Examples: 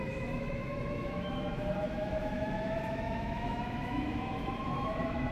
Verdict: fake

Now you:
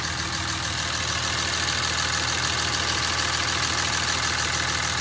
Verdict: real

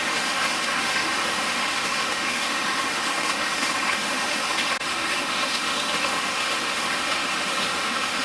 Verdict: fake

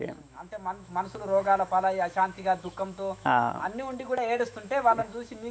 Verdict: fake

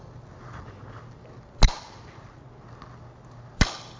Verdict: real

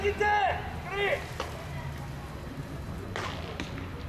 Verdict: real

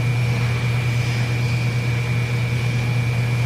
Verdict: real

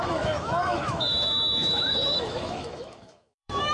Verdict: fake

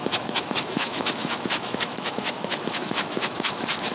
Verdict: fake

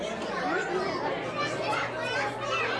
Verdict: real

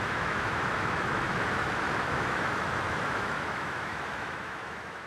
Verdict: fake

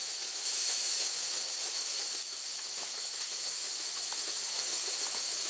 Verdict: fake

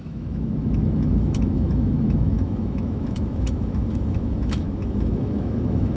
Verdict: fake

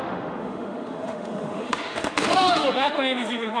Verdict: fake